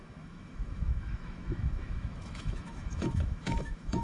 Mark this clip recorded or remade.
remade